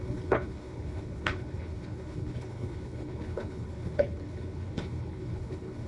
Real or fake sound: fake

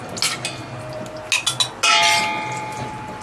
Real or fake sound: real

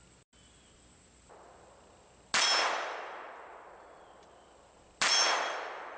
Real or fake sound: real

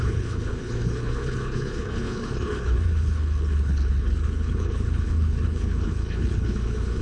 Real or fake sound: fake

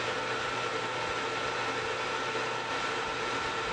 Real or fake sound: real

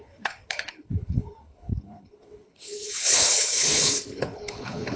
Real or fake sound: fake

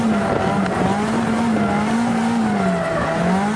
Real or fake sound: real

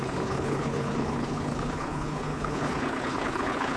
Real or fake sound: fake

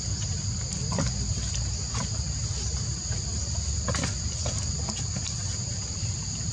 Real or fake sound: real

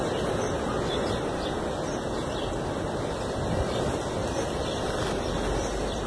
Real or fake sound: real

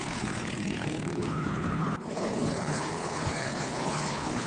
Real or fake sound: fake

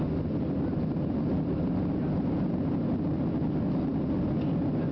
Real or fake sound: real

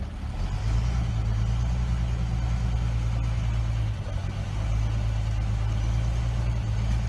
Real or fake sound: real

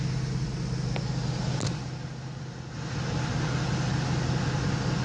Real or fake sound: real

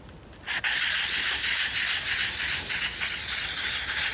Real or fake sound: real